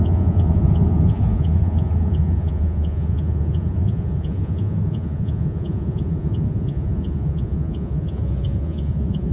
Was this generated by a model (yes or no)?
yes